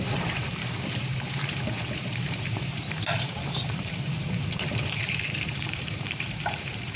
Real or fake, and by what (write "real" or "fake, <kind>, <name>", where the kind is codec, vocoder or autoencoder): fake, vocoder, BigVGAN v2